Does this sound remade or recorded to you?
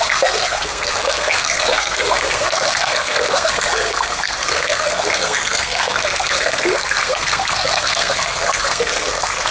remade